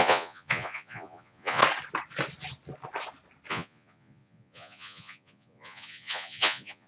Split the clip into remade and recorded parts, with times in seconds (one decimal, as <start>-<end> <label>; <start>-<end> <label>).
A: 0.0-1.6 remade; 1.6-3.5 recorded; 3.5-6.9 remade